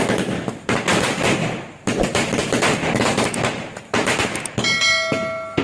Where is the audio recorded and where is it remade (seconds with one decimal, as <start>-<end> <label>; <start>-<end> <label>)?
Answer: 0.0-5.6 recorded